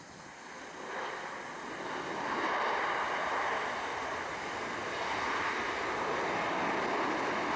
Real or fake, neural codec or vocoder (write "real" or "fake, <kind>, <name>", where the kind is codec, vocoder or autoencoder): real